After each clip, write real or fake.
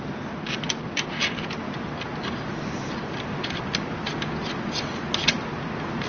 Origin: real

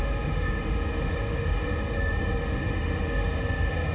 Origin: fake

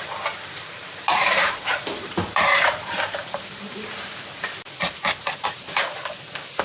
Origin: fake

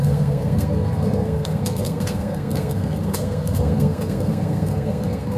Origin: fake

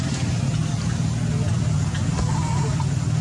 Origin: real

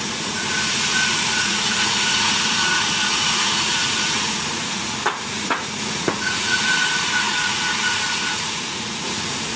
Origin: fake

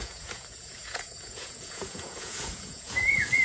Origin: fake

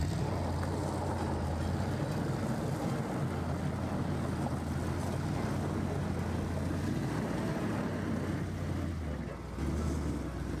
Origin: real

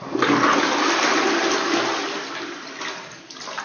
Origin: real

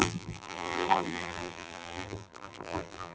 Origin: fake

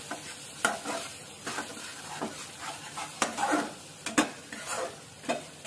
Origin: real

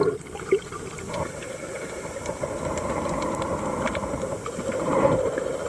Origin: real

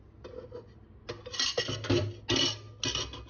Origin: real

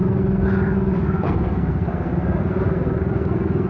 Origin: fake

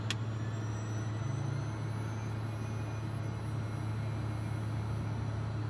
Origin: real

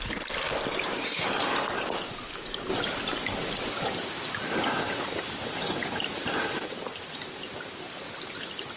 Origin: real